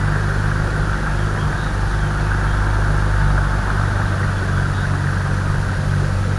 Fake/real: real